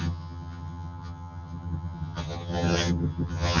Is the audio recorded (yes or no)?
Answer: no